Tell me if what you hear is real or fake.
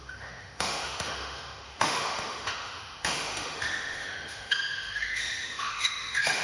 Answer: fake